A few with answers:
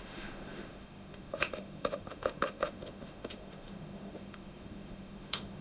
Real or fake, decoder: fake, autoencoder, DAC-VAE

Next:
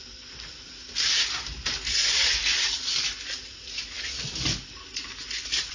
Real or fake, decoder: real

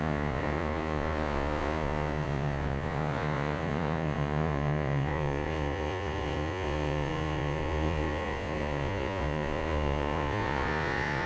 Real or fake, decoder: fake, vocoder, Vocos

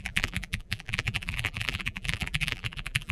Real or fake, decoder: fake, vocoder, BigVGAN v2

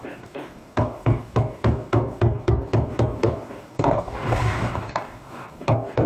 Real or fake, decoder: fake, codec, DAC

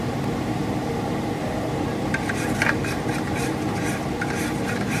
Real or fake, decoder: fake, vocoder, BigVGAN v2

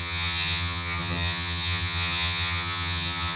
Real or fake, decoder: fake, vocoder, HiFi-GAN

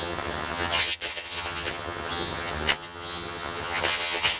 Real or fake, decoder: fake, vocoder, HiFi-GAN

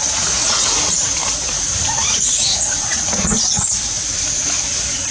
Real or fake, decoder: fake, vocoder, Vocos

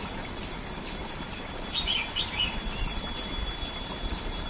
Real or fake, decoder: fake, vocoder, BigVGAN v2